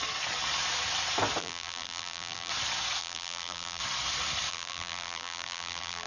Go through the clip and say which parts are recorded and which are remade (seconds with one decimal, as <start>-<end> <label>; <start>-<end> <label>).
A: 0.0-1.4 recorded; 1.4-2.5 remade; 2.5-3.0 recorded; 3.0-3.8 remade; 3.8-4.5 recorded; 4.5-6.1 remade